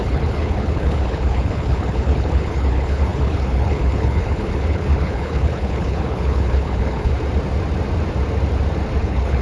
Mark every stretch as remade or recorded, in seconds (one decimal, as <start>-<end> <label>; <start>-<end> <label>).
0.0-7.1 remade; 7.1-9.0 recorded; 9.0-9.4 remade